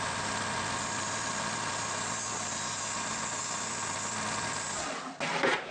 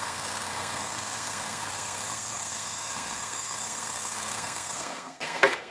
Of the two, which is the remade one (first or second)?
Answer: second